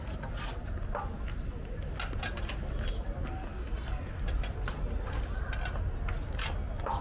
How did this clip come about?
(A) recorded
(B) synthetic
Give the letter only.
A